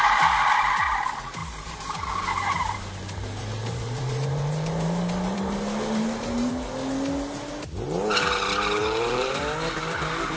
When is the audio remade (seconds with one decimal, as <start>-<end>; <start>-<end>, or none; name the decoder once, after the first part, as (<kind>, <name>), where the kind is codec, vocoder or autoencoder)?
1.4-6.5 (vocoder, BigVGAN v2); 8.8-9.4